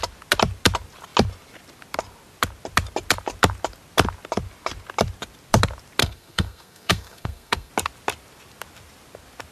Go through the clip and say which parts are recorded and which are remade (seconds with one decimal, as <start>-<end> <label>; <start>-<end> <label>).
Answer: 0.0-6.0 recorded; 6.0-7.7 remade; 7.7-9.5 recorded